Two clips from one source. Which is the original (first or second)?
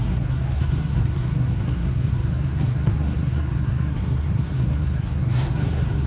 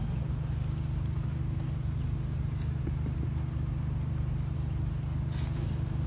second